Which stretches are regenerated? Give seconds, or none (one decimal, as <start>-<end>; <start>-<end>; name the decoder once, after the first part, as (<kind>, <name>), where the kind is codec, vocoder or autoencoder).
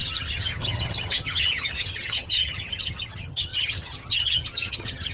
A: 0.0-5.1 (vocoder, HiFi-GAN)